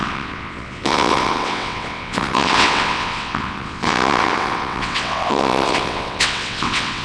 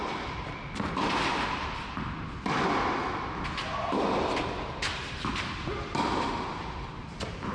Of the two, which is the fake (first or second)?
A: first